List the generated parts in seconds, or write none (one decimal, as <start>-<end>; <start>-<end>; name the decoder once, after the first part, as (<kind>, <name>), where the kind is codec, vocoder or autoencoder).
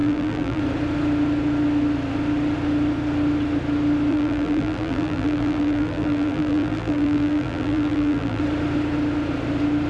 0.0-0.6 (vocoder, BigVGAN v2); 4.1-8.4